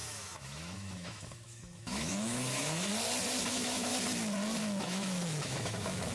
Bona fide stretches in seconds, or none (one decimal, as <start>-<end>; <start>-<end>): 2.9-3.5; 3.9-4.6